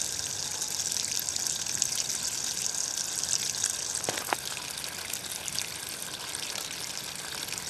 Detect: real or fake real